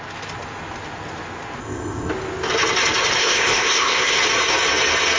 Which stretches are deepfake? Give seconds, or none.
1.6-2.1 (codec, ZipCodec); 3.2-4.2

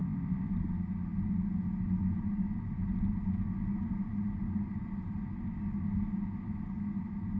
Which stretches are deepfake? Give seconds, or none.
0.0-0.5 (codec, ZipCodec)

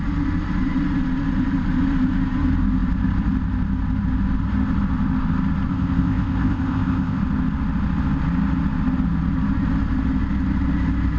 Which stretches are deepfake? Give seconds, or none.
5.7-7.2 (codec, ZipCodec)

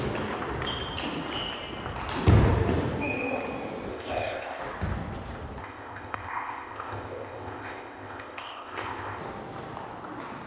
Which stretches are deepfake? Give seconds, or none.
3.9-4.6 (codec, ZipCodec); 5.6-9.2

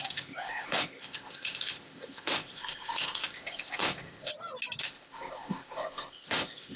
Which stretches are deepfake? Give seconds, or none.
0.0-4.3 (codec, ZipCodec); 4.8-6.8

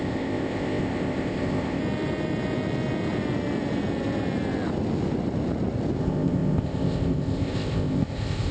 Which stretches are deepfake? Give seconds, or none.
0.0-1.8 (codec, ZipCodec); 6.0-8.5

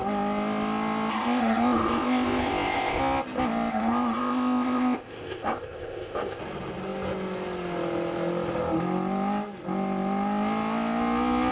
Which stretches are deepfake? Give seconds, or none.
1.1-3.0 (codec, ZipCodec); 3.7-6.4

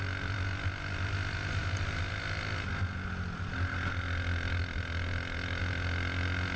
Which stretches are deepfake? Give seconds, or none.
none